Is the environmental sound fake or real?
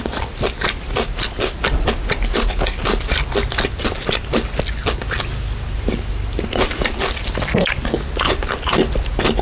real